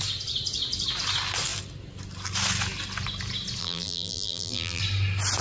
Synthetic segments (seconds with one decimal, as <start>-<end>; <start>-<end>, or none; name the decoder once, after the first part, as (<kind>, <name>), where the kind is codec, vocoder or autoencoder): 3.6-4.8 (vocoder, BigVGAN v2)